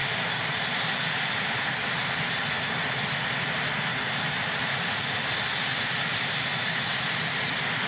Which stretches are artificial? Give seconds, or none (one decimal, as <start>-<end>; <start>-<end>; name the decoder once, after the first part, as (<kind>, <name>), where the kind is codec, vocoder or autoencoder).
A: 0.0-0.7 (vocoder, BigVGAN v2); 3.9-5.0